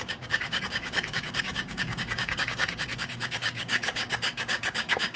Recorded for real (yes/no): no